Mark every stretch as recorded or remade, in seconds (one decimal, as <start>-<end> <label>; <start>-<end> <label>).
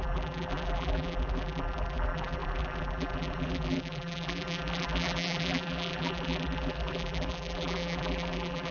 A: 0.0-8.7 remade